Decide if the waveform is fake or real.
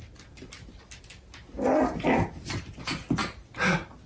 real